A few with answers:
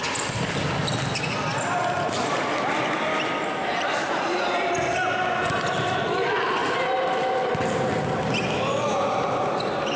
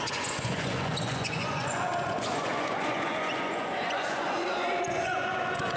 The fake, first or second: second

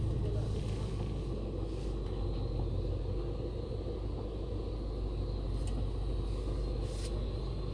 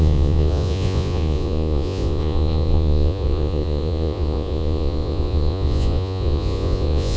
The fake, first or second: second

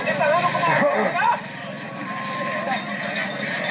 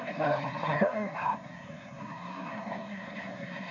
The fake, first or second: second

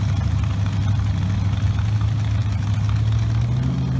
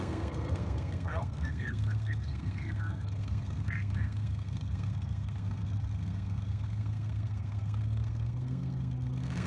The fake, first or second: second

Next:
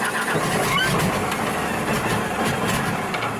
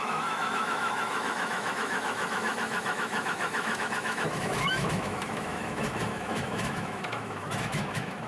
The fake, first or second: second